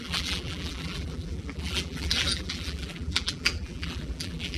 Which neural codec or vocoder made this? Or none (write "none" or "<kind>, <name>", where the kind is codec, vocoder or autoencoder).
vocoder, BigVGAN v2